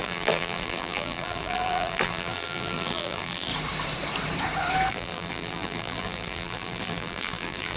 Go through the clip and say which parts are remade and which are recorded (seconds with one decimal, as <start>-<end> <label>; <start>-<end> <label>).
0.0-3.5 remade; 3.5-4.9 recorded; 4.9-7.8 remade